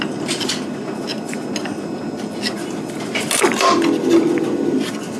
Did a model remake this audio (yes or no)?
no